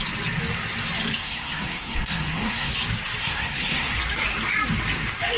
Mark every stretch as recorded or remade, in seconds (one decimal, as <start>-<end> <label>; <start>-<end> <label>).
0.0-1.2 recorded; 1.2-2.7 remade; 2.7-3.2 recorded; 3.2-4.0 remade; 4.0-5.4 recorded